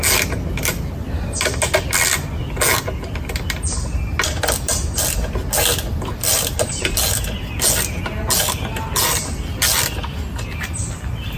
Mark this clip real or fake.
real